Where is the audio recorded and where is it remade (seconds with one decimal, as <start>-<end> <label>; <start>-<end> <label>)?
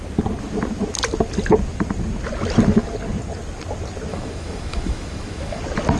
0.0-4.1 recorded; 4.1-5.6 remade; 5.6-6.0 recorded